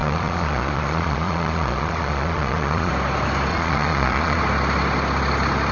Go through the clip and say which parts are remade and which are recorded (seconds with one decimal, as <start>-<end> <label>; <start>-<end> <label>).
0.0-2.9 remade; 2.9-3.5 recorded; 3.5-4.4 remade; 4.4-5.7 recorded